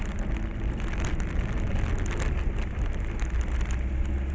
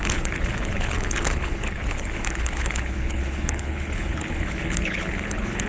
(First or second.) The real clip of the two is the first